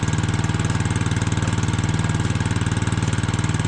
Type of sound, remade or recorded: recorded